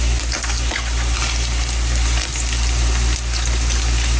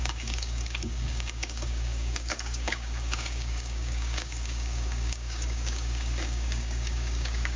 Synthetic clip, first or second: second